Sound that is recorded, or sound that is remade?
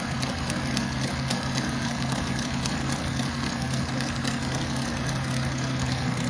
remade